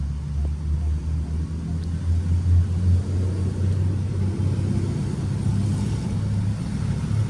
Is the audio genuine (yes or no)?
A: yes